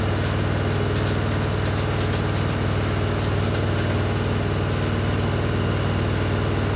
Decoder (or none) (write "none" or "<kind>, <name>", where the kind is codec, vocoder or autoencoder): none